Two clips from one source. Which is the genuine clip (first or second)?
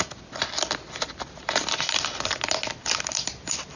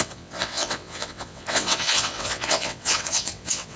first